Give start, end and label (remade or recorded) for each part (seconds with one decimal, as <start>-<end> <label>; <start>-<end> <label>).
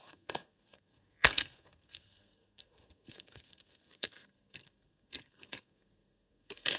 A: 0.0-6.8 remade